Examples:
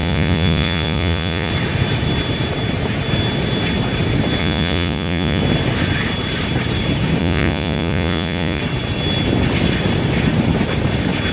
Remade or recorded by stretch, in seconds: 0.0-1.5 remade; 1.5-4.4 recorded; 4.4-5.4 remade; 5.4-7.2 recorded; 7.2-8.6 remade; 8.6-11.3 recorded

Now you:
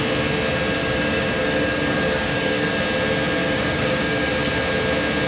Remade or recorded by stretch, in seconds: 0.0-0.8 recorded; 0.8-2.8 remade; 2.8-3.4 recorded; 3.4-4.3 remade; 4.3-5.3 recorded

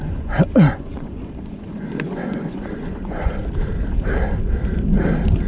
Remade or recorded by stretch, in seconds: 0.0-3.3 remade; 3.3-5.5 recorded

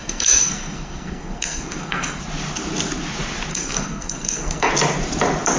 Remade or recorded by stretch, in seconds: 0.0-2.2 remade; 2.2-3.5 recorded; 3.5-4.7 remade; 4.7-5.6 recorded